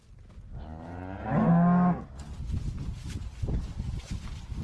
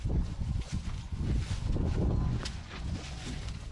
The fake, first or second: second